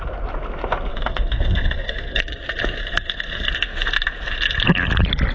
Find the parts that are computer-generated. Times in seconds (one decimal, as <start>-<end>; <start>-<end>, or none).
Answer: 0.9-2.2; 2.8-3.5